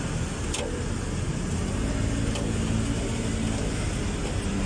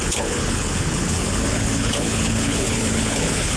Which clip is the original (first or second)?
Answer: first